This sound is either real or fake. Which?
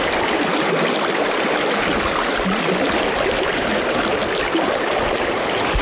real